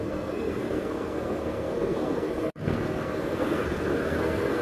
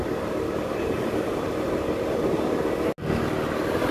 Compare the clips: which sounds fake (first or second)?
first